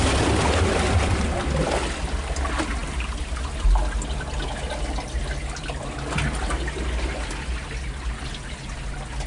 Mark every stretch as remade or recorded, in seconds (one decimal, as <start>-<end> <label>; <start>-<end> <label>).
0.0-9.3 recorded